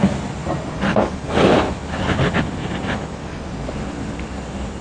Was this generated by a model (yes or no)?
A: no